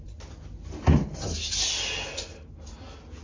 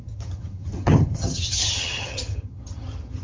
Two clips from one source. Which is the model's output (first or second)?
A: second